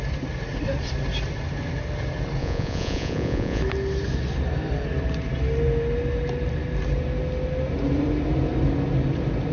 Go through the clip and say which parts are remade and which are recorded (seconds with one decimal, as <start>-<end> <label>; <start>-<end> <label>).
0.0-2.4 recorded; 2.4-3.6 remade; 3.6-9.5 recorded